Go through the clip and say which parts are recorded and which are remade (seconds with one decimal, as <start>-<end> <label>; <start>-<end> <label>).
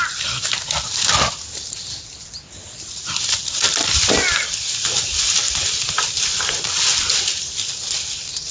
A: 0.0-8.5 recorded